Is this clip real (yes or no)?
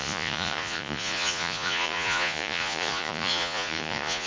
no